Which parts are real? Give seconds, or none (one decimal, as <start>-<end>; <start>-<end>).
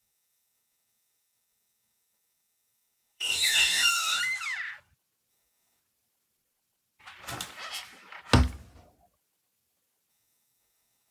4.2-5.3; 5.8-10.1